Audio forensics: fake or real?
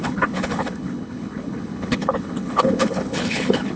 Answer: fake